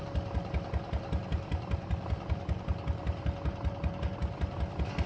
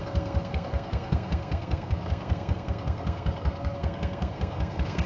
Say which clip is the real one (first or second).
first